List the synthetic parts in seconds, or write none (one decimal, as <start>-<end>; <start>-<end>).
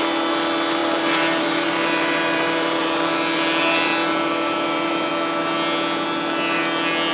0.8-5.1